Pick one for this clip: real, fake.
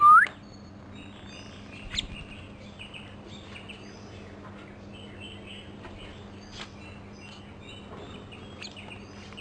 real